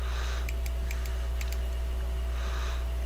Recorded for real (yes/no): yes